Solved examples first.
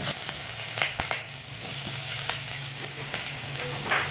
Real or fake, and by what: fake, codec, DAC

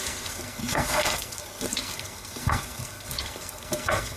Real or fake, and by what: fake, codec, SNAC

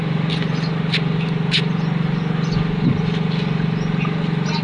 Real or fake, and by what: real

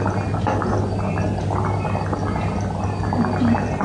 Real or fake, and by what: real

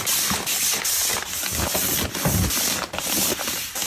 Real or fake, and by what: real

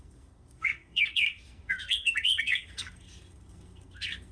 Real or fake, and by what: fake, codec, SNAC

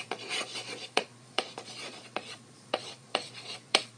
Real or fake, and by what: fake, vocoder, Vocos